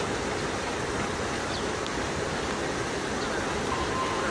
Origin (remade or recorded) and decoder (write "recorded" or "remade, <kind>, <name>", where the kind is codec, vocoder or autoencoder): recorded